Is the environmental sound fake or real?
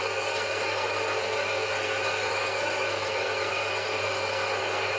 fake